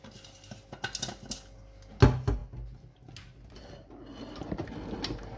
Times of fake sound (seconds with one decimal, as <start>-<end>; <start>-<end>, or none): none